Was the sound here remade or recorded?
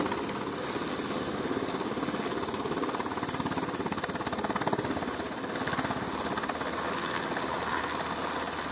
recorded